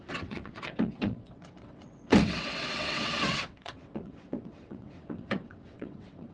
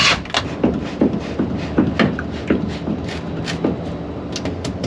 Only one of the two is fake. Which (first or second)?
first